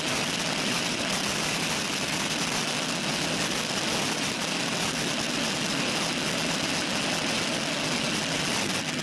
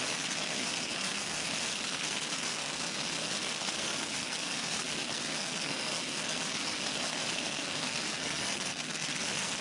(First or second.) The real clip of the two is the first